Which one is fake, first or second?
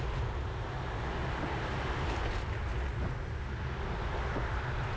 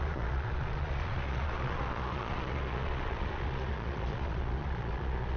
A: second